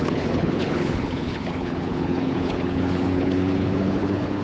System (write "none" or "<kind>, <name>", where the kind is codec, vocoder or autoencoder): codec, HILCodec